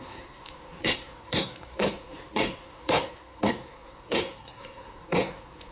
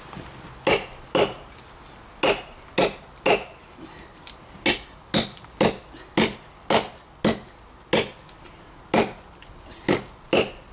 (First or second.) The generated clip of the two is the first